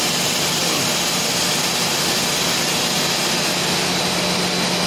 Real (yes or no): yes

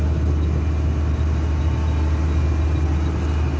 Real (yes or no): yes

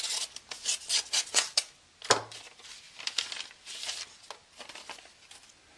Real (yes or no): yes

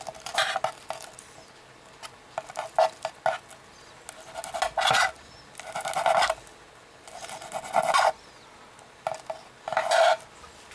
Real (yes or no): yes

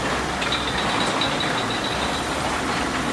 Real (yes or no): yes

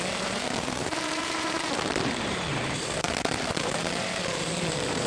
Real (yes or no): no